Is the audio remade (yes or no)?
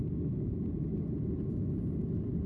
no